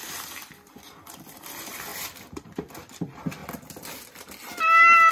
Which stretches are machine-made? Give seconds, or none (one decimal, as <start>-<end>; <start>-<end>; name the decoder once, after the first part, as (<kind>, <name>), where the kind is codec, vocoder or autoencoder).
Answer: 0.0-3.4 (vocoder, BigVGAN v2)